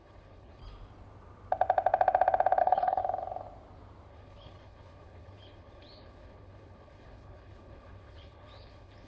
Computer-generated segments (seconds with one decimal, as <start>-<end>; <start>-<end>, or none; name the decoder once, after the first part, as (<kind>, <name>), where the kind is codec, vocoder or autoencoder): 0.0-0.6 (codec, HILCodec); 2.6-3.0; 4.1-9.1